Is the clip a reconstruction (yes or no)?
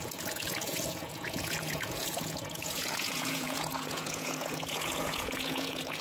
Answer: yes